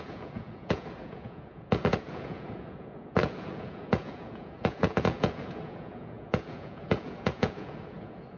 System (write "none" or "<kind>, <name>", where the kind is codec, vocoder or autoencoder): vocoder, Vocos